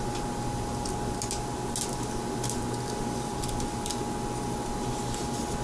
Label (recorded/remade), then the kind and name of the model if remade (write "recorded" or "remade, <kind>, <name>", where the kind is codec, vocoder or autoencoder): recorded